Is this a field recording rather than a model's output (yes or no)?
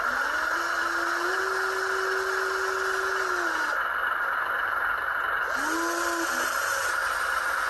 yes